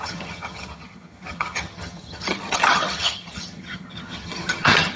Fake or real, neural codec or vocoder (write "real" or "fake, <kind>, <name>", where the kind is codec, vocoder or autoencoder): fake, vocoder, HiFi-GAN